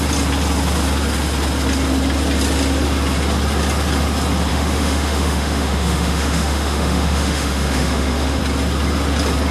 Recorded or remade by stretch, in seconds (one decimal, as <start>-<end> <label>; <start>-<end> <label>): 0.0-4.5 recorded; 4.5-8.4 remade; 8.4-9.5 recorded